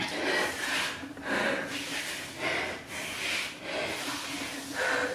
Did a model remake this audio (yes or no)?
no